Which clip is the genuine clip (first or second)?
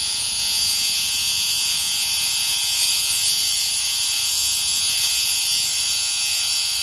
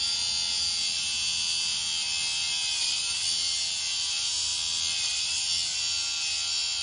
second